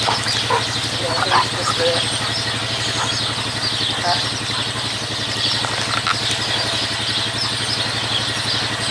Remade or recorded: recorded